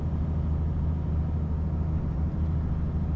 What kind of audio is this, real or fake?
real